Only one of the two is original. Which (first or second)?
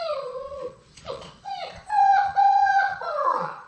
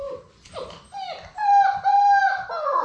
second